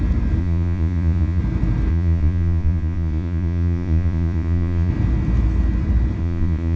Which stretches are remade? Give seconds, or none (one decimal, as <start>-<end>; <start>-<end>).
0.4-1.4; 1.9-4.9; 6.2-6.8